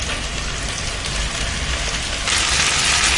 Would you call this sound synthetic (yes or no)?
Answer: no